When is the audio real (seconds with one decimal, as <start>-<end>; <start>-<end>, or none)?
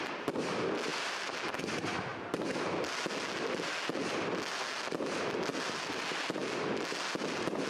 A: 0.0-7.7